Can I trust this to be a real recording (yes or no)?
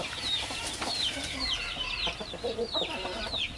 no